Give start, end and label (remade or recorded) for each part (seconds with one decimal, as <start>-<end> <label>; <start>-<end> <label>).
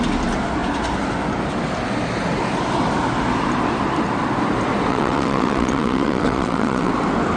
0.0-4.9 recorded; 4.9-6.9 remade; 6.9-7.4 recorded